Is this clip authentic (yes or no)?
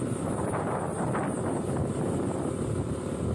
yes